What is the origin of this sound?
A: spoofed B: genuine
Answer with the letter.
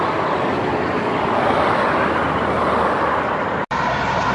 B